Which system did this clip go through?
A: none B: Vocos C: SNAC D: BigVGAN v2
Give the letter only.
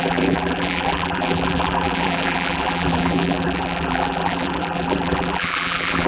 D